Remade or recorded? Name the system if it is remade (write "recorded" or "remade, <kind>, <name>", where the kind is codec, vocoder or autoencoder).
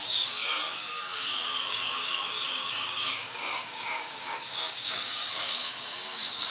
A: remade, codec, DAC